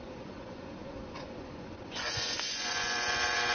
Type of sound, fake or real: fake